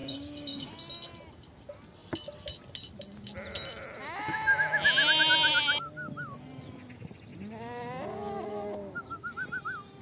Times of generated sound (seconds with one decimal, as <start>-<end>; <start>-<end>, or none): 0.0-0.7